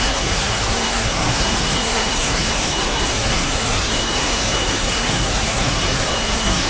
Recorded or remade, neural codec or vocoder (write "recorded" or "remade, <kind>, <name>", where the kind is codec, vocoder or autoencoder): remade, codec, SNAC